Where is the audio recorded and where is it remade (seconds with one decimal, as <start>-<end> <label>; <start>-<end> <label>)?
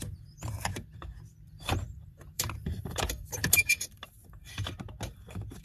0.0-0.7 remade; 0.7-1.5 recorded; 1.5-4.2 remade; 4.2-5.6 recorded